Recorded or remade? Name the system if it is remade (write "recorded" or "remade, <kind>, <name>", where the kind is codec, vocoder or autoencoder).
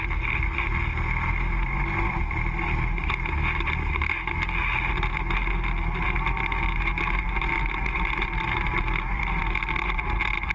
recorded